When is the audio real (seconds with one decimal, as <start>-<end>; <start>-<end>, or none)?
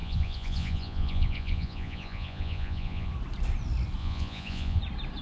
3.1-4.0; 4.8-5.2